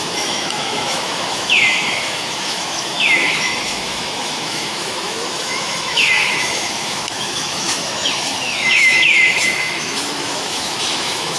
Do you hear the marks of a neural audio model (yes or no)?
yes